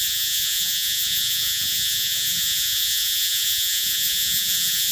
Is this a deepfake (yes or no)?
yes